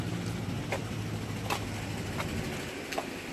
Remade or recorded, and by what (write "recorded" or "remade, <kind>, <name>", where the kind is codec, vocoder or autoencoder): recorded